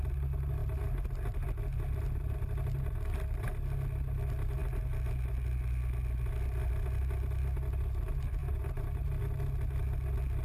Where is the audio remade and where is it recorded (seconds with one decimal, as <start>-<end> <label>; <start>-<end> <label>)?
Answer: 0.0-8.4 recorded; 8.4-9.2 remade; 9.2-10.4 recorded